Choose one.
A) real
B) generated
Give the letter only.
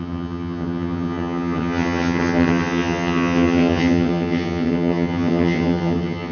B